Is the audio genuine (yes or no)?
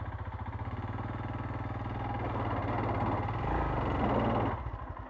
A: yes